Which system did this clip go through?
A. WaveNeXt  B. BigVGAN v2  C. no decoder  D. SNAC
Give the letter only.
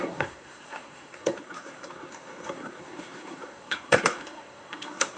D